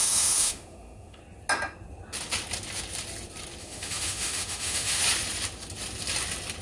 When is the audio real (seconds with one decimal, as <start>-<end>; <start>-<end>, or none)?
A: 1.2-3.6; 5.0-6.6